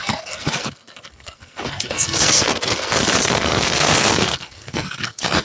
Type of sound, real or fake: fake